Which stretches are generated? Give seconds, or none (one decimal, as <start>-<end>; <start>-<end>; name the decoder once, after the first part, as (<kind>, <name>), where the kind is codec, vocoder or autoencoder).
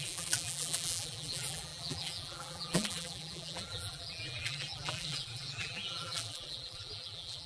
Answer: 0.0-7.5 (vocoder, BigVGAN v2)